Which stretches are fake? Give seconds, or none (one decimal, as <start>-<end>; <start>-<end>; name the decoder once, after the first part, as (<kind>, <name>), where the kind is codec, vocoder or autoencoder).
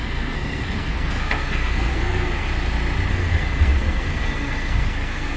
0.0-2.5 (codec, SNAC); 3.1-5.4